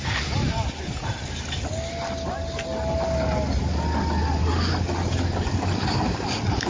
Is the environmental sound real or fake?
real